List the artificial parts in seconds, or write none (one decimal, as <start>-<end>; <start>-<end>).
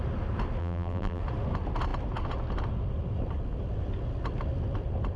0.6-1.2